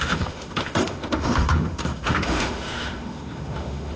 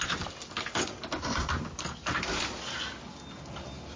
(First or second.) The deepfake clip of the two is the first